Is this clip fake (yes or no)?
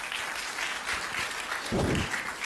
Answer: no